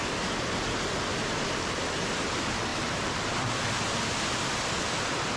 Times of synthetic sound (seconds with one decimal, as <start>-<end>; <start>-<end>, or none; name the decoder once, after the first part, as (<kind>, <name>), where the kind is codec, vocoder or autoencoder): 2.7-3.5 (vocoder, BigVGAN v2)